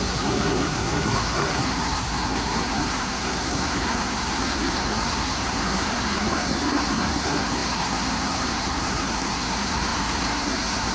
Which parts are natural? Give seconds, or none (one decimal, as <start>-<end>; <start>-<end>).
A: none